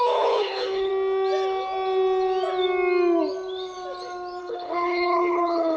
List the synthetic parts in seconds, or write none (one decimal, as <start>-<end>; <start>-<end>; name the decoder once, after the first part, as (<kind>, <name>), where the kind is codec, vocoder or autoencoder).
0.0-0.9 (codec, HILCodec); 4.4-5.8